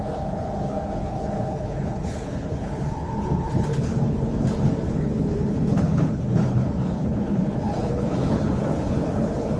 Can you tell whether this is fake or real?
fake